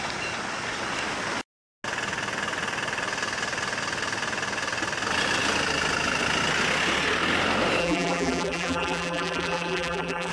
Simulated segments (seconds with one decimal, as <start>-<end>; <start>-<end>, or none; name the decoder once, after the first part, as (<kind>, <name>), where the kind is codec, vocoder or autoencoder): 7.8-10.3 (vocoder, BigVGAN v2)